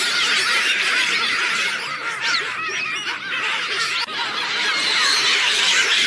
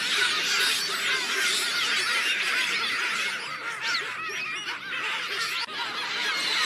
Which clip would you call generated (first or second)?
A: first